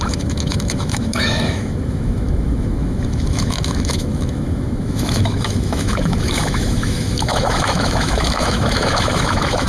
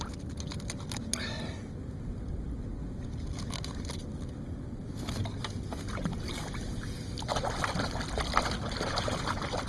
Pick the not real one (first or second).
first